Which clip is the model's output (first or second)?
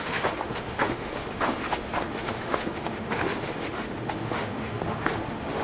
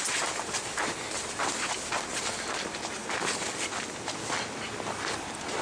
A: first